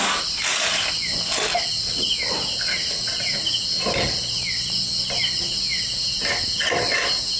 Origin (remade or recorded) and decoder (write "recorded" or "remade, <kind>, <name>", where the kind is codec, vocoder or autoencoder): recorded